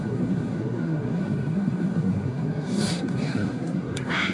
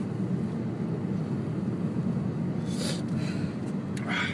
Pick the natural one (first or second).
second